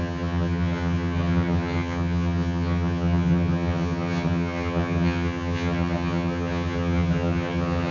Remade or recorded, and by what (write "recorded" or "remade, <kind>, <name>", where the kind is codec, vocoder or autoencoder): remade, vocoder, HiFi-GAN